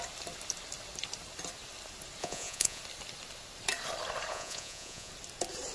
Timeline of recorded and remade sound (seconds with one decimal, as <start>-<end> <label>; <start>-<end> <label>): 0.0-2.2 recorded; 2.2-2.8 remade; 2.8-4.3 recorded; 4.3-5.1 remade; 5.1-5.7 recorded